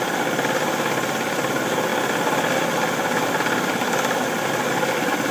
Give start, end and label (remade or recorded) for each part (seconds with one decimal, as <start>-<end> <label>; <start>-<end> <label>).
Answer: 0.0-5.3 recorded